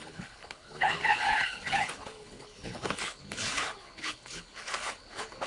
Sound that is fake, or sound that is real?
fake